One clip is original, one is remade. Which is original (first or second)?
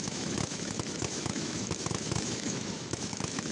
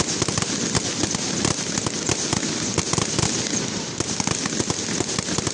second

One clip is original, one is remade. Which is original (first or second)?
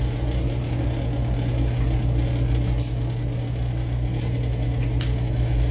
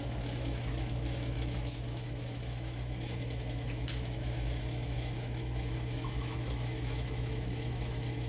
first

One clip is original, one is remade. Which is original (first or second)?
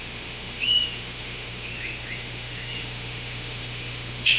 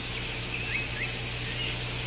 second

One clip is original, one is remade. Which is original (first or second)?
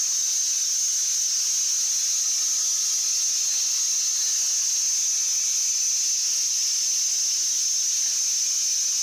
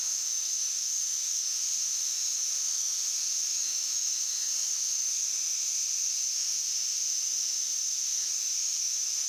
first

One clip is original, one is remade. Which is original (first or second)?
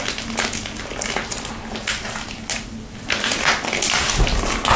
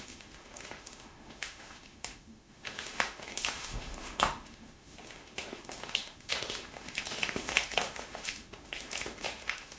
first